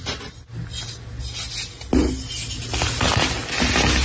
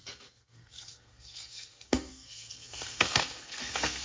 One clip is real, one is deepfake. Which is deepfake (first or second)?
second